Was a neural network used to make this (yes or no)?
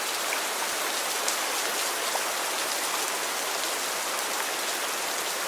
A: no